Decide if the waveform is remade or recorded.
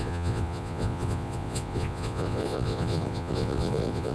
remade